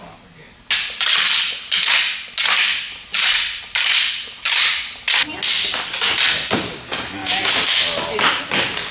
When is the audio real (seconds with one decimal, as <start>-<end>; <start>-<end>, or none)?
0.0-8.9